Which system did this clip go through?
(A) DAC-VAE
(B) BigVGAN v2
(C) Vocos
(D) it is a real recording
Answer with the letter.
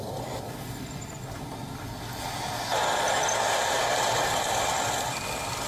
D